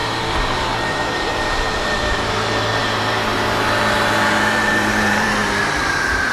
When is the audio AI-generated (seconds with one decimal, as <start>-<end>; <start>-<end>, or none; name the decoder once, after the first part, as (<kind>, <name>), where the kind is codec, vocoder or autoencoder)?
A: 0.0-6.3 (vocoder, BigVGAN v2)